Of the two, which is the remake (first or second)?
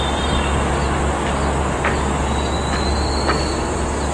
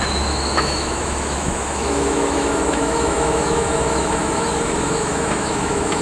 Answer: second